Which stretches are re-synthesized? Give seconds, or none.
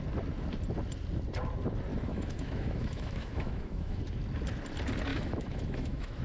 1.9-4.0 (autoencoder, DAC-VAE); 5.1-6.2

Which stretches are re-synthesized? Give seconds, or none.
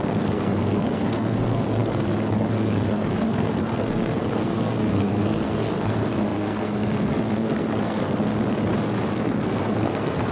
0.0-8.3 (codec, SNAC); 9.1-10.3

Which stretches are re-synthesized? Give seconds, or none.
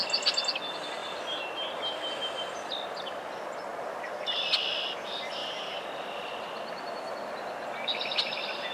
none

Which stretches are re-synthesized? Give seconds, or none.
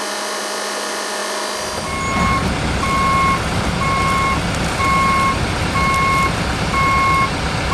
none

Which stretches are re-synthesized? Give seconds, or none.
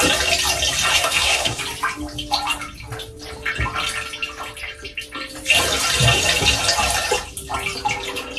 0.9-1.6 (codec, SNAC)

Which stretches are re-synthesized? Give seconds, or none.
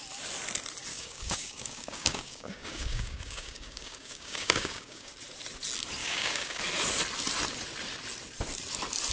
0.9-5.1 (codec, DAC); 6.0-6.6